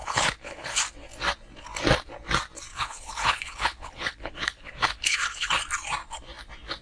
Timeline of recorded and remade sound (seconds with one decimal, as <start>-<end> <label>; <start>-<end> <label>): 0.0-0.8 remade; 0.8-2.7 recorded; 2.7-5.5 remade; 5.5-6.8 recorded

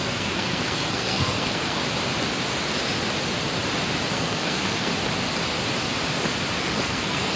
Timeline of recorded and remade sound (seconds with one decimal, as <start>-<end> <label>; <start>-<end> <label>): 0.0-1.8 remade; 1.8-4.1 recorded; 4.1-4.9 remade; 4.9-6.6 recorded; 6.6-7.4 remade

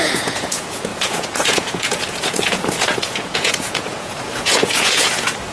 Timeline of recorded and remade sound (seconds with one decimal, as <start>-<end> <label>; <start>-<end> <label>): 0.0-5.5 remade